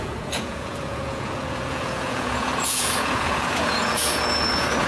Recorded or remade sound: remade